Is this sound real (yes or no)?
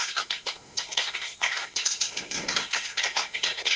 no